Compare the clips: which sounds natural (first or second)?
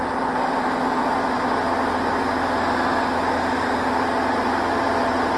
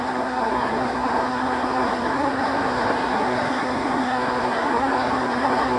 first